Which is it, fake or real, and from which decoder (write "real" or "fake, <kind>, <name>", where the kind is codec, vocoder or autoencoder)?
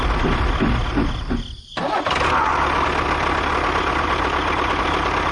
real